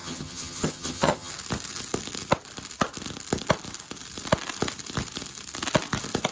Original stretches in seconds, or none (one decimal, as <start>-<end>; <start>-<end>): 1.3-6.3